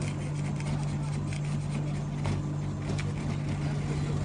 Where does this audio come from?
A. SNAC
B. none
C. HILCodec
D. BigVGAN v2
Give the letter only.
B